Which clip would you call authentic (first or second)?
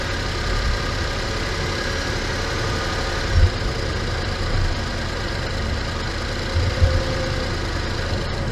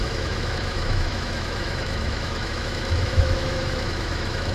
first